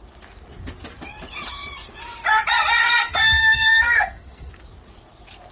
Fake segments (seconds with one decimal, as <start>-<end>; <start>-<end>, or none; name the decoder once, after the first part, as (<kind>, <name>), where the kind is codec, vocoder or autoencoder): 2.8-4.5 (codec, SNAC)